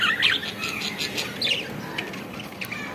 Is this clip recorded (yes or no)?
yes